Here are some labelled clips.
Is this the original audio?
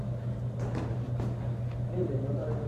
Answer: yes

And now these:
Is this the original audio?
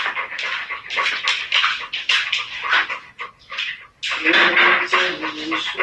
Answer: yes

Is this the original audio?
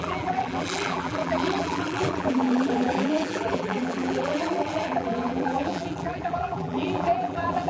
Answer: no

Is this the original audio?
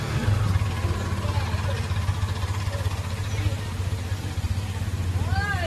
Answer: yes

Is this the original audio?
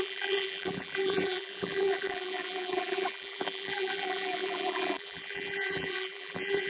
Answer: no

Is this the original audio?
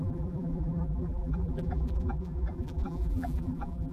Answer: no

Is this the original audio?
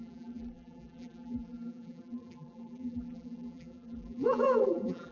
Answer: no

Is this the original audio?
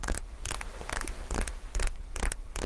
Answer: no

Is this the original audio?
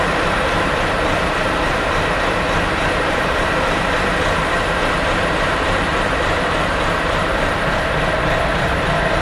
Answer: no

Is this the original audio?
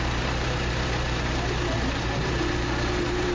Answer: no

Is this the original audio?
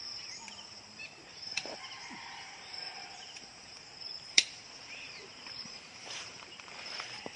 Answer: no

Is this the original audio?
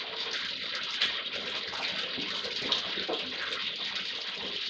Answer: yes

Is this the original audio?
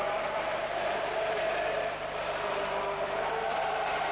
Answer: no